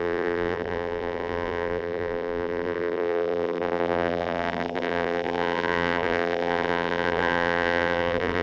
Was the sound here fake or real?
fake